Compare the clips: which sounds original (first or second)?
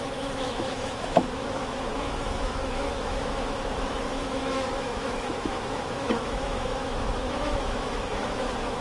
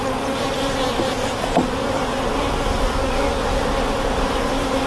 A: second